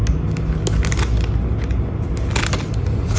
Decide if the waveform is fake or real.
real